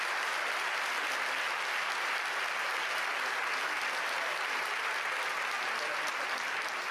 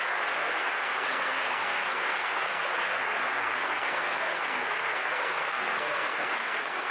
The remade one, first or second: second